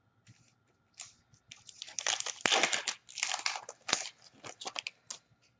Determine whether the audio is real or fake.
real